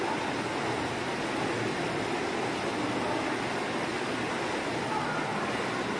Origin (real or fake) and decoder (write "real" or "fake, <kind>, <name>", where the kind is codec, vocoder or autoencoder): real